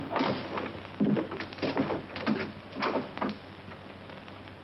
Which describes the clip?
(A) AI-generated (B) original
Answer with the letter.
B